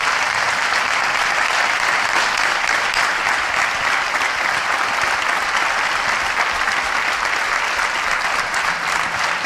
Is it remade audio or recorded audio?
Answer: recorded